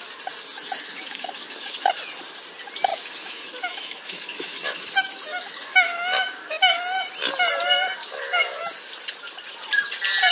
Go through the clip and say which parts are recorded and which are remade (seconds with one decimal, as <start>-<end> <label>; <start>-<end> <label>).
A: 0.0-0.5 recorded; 0.5-1.9 remade; 1.9-2.9 recorded; 2.9-7.0 remade; 7.0-8.0 recorded; 8.0-8.7 remade; 8.7-10.3 recorded